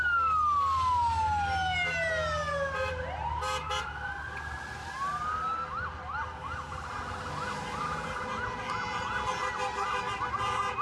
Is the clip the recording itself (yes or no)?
yes